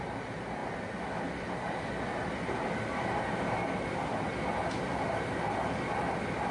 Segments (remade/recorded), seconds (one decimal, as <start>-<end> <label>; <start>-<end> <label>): 0.0-6.5 recorded